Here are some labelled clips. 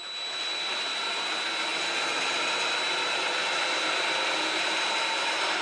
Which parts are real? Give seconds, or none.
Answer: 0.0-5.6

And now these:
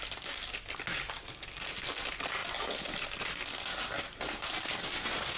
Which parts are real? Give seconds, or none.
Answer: 0.0-5.4

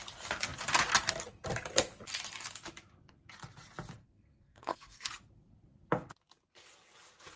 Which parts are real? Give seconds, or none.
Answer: 0.0-4.0; 5.1-7.4